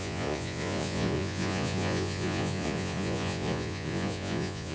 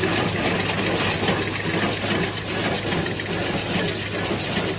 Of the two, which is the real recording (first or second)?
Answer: second